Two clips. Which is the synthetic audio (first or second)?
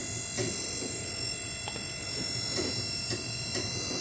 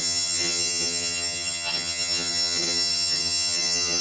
second